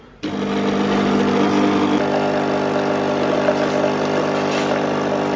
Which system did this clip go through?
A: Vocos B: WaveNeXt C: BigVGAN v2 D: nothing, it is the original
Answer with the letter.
D